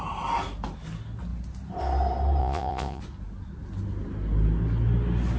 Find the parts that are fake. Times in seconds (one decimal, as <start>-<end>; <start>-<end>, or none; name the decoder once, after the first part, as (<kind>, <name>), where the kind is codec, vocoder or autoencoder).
2.4-3.0 (vocoder, Vocos)